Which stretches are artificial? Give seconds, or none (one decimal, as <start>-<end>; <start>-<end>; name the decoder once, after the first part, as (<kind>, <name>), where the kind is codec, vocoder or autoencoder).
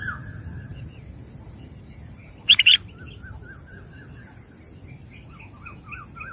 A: 0.7-2.7 (vocoder, BigVGAN v2)